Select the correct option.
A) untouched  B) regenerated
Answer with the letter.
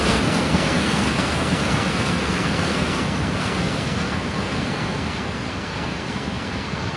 B